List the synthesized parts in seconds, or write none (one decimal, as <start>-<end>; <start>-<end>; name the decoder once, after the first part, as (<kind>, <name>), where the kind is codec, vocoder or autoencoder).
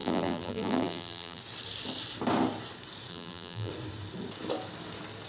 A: 0.0-1.4 (vocoder, BigVGAN v2); 3.1-3.7